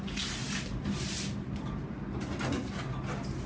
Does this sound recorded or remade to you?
recorded